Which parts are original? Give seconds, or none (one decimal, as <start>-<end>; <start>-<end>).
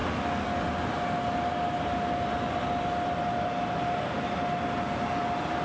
0.0-5.6